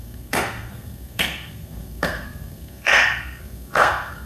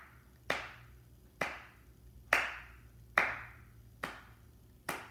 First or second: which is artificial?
first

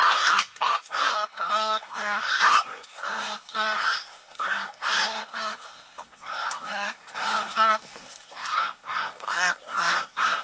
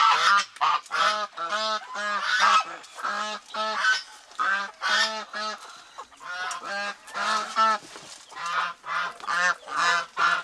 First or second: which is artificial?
first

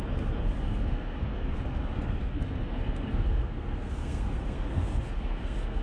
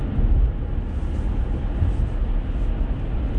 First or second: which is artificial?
first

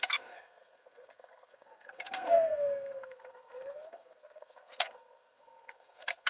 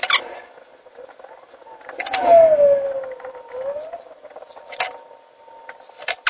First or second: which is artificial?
first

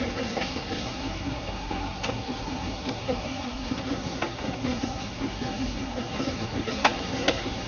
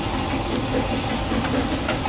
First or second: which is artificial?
first